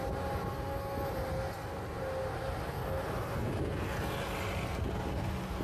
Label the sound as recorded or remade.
recorded